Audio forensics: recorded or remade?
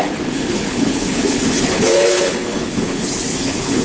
remade